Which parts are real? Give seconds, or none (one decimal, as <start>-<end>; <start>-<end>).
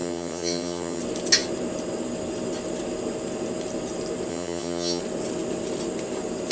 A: 1.0-4.3; 5.0-6.5